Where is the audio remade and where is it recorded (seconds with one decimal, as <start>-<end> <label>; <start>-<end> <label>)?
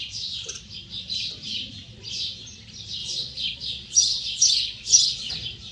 0.0-3.0 recorded; 3.0-5.3 remade; 5.3-5.7 recorded